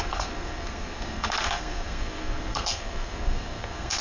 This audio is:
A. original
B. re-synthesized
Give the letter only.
B